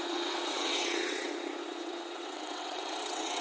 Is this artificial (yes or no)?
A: yes